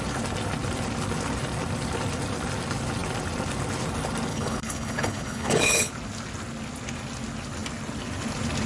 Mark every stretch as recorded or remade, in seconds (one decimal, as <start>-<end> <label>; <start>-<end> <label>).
0.0-4.3 recorded; 4.3-5.9 remade; 5.9-8.7 recorded